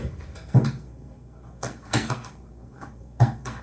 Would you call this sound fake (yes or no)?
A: yes